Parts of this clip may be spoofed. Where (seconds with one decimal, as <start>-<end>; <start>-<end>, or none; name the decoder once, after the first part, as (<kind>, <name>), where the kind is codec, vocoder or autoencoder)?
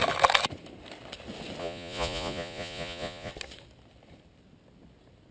1.6-3.3 (vocoder, Vocos)